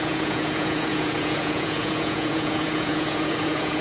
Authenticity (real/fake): fake